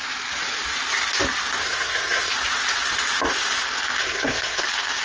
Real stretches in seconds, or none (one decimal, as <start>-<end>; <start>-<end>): 0.0-1.6; 2.3-4.0; 4.6-5.0